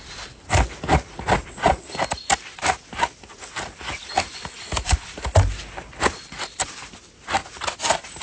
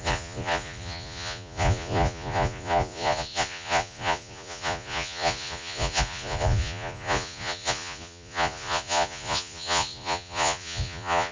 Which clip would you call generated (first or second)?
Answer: second